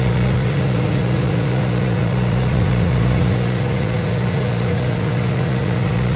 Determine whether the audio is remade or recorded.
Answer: remade